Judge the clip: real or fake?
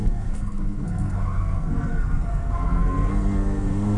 fake